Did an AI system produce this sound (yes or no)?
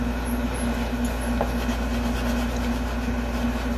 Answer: no